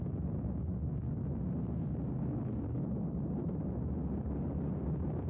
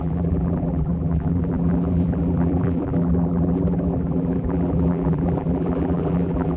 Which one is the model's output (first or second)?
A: second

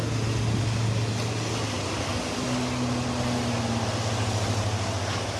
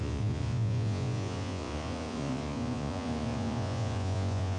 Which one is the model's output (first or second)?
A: second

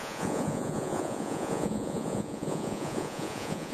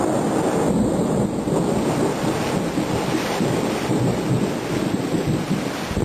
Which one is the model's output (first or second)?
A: first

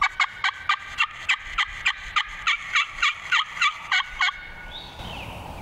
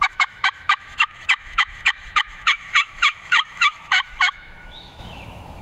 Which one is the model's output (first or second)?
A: second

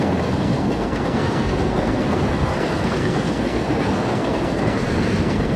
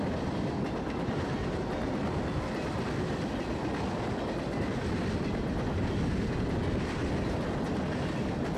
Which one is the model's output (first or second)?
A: first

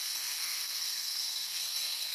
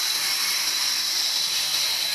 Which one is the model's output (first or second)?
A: first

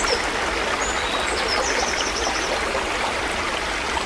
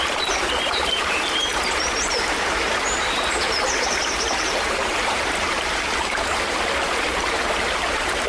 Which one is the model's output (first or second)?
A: second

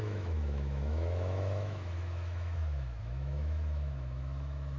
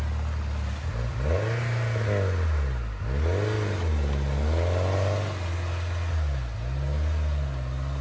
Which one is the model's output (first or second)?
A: first